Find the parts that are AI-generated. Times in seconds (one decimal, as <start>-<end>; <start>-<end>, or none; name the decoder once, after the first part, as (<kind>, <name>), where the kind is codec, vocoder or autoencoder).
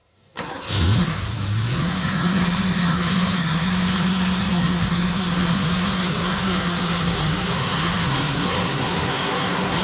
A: 0.0-9.8 (codec, SNAC)